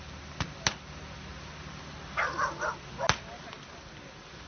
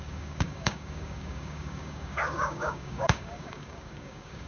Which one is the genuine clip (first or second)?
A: first